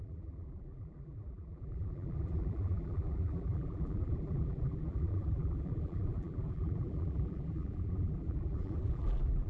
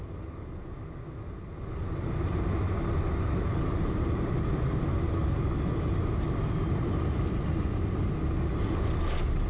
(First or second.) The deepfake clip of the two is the first